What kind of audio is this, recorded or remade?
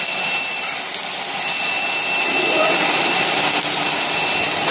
remade